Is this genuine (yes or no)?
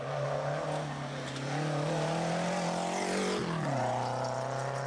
yes